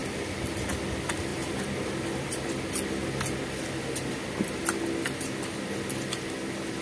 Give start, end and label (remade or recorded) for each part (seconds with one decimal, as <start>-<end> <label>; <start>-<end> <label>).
0.0-6.8 recorded